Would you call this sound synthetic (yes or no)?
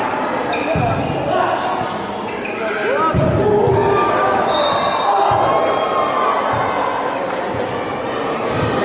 no